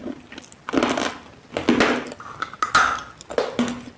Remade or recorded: recorded